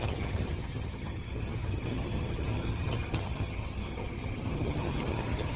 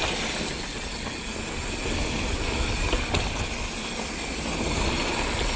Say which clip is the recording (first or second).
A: second